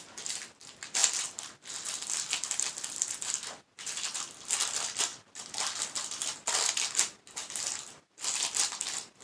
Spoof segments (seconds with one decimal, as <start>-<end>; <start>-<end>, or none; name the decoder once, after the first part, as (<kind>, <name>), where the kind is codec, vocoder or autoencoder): none

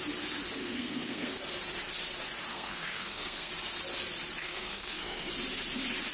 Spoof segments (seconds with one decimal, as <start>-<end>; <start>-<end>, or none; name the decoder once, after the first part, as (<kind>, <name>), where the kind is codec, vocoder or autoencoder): 0.6-1.3 (codec, SNAC); 2.5-3.5; 4.4-5.3

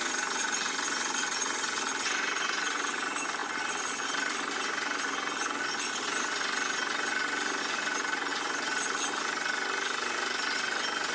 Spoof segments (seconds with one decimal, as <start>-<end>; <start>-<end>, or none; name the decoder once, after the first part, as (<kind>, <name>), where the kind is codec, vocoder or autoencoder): none

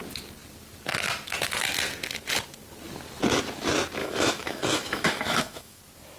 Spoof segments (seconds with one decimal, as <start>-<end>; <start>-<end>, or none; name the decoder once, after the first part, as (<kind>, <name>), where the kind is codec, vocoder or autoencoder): 4.0-5.8 (autoencoder, DAC-VAE)

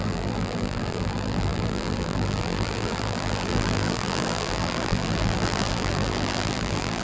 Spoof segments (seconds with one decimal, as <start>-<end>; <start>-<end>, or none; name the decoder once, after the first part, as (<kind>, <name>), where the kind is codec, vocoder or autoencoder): 0.0-7.0 (vocoder, BigVGAN v2)

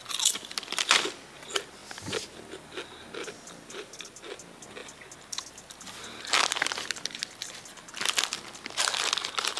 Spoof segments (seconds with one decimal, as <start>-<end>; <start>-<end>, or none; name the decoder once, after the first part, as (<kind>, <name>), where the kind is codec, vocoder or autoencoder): none

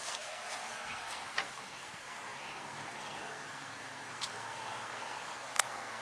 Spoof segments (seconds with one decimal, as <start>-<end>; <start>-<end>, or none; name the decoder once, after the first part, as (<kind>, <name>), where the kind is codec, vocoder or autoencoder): 0.0-6.0 (codec, SNAC)